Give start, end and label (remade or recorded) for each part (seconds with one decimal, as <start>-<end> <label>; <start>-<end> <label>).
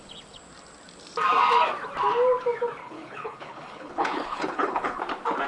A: 0.0-2.8 recorded; 2.8-5.0 remade; 5.0-5.5 recorded